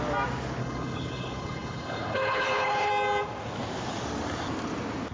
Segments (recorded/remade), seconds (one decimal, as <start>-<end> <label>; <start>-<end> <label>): 0.0-0.6 recorded; 0.6-2.9 remade; 2.9-5.1 recorded